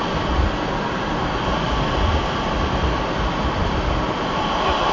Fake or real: real